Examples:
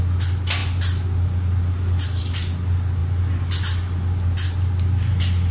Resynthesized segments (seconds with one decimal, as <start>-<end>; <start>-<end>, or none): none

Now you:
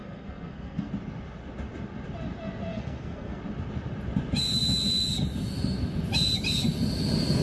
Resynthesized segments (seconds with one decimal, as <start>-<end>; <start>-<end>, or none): 0.0-0.9; 2.7-3.4

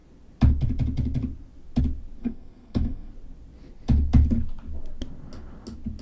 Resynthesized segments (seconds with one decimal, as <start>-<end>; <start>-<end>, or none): 2.2-3.1

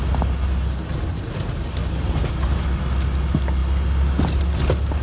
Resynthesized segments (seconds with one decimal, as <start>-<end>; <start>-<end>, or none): none

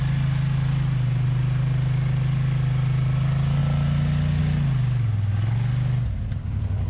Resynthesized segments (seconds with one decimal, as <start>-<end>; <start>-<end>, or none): none

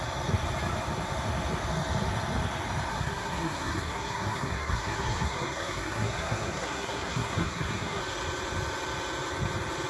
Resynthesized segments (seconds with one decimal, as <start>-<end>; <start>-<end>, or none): 2.9-8.0

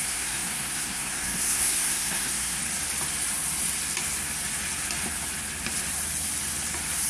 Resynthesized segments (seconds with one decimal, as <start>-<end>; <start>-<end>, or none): 0.0-2.6